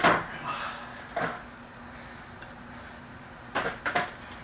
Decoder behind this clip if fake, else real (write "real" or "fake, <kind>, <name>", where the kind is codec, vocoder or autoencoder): real